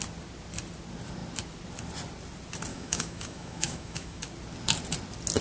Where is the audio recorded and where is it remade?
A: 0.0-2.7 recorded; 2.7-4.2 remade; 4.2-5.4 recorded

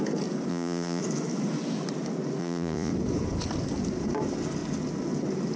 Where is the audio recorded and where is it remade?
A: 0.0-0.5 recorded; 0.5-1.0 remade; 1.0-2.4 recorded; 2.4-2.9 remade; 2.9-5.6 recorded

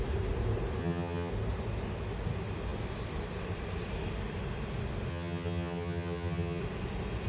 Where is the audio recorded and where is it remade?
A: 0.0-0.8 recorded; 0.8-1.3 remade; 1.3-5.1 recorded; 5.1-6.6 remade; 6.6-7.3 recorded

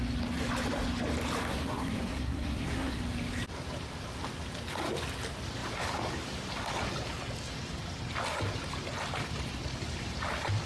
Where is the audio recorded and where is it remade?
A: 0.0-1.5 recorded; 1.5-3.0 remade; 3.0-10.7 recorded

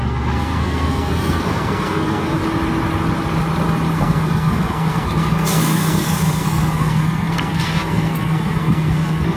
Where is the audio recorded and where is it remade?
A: 0.0-2.4 remade; 2.4-3.9 recorded; 3.9-9.4 remade

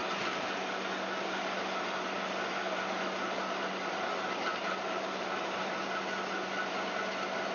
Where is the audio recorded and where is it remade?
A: 0.0-4.5 recorded; 4.5-5.6 remade; 5.6-7.5 recorded